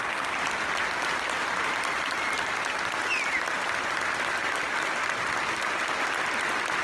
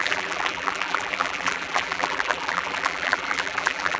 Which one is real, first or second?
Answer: first